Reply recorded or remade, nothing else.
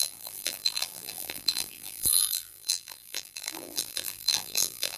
remade